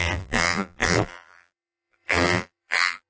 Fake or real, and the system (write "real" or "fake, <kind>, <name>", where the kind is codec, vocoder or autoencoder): fake, vocoder, BigVGAN v2